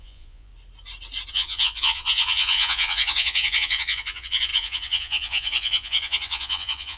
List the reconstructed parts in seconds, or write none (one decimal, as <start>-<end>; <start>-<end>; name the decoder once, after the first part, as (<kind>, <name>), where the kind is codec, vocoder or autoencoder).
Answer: 0.0-0.5 (vocoder, Vocos); 1.3-7.0